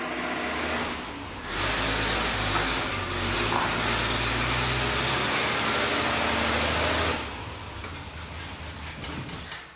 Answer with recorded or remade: recorded